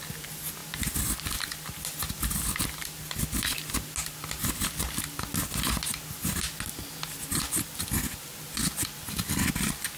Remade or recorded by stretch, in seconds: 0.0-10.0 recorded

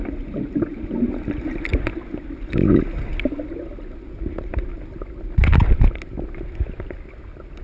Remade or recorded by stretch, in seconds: 0.0-7.6 recorded

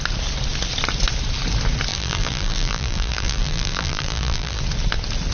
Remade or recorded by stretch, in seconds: 0.0-1.9 recorded; 1.9-4.6 remade; 4.6-5.3 recorded

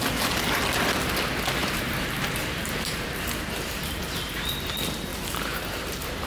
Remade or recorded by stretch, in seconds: 0.0-1.6 recorded; 1.6-4.5 remade; 4.5-5.1 recorded; 5.1-5.8 remade; 5.8-6.3 recorded

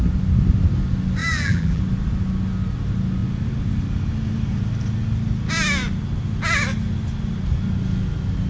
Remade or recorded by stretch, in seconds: 0.0-1.2 recorded; 1.2-1.8 remade; 1.8-8.5 recorded

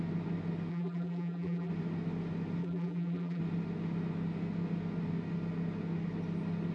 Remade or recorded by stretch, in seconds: 0.0-0.7 recorded; 0.7-1.7 remade; 1.7-2.6 recorded; 2.6-3.4 remade; 3.4-6.7 recorded

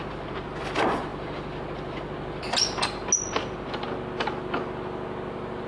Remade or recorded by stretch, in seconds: 0.0-5.7 recorded

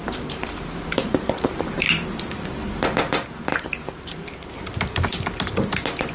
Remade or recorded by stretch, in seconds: 0.0-1.9 remade; 1.9-3.5 recorded; 3.5-5.5 remade; 5.5-6.1 recorded